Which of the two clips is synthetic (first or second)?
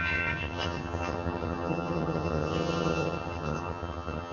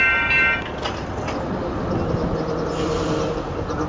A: first